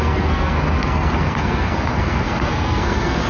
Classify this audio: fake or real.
fake